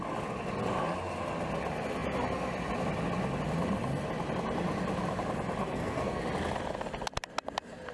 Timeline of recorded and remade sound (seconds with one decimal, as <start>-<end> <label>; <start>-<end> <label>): 0.0-5.6 recorded; 5.6-6.2 remade; 6.2-7.9 recorded